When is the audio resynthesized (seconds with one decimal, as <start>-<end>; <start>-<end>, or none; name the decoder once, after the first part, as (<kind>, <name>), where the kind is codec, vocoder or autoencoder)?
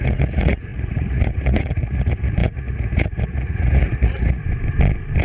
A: 0.0-4.4 (vocoder, Vocos)